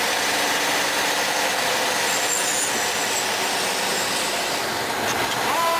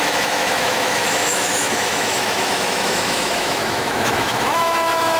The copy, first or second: second